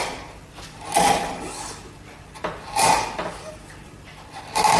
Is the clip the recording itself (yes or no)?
yes